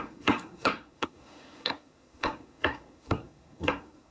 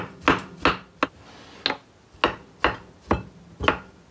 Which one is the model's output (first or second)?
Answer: first